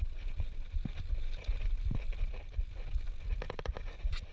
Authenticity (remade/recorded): recorded